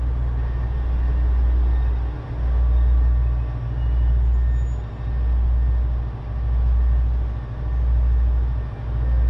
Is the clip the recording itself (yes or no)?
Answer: yes